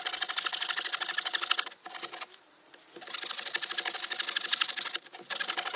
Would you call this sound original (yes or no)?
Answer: yes